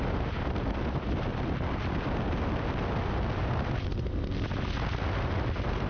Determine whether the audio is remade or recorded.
recorded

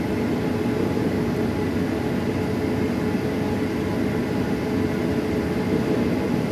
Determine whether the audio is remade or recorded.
recorded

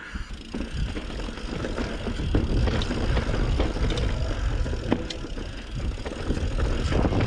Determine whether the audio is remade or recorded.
recorded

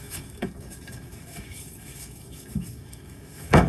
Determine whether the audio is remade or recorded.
remade